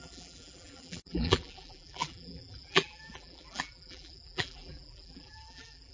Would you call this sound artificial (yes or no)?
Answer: yes